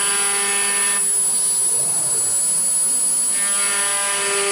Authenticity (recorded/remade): recorded